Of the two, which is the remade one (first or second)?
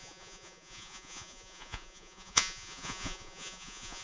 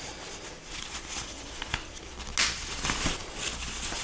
first